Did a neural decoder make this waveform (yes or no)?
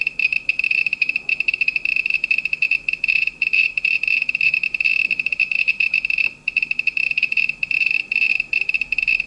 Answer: yes